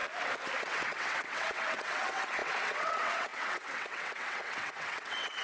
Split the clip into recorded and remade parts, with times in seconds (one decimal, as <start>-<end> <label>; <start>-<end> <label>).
0.0-0.6 recorded; 0.6-5.4 remade